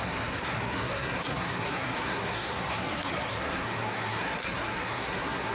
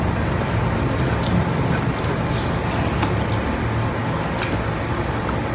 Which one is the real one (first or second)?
second